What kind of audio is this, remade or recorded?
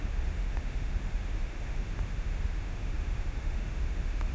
remade